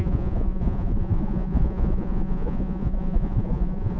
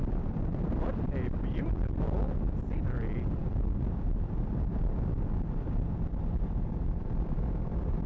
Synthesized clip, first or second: first